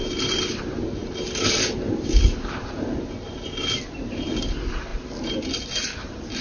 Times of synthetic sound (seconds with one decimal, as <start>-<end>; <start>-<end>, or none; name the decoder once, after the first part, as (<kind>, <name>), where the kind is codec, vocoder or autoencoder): 0.0-0.6 (vocoder, BigVGAN v2)